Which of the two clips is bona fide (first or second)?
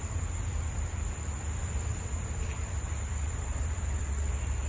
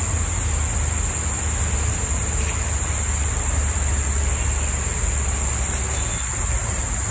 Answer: second